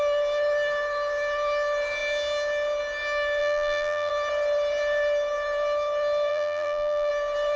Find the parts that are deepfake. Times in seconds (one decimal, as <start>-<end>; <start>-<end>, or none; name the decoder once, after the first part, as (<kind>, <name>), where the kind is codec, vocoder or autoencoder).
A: 3.4-4.1 (vocoder, BigVGAN v2); 6.3-7.1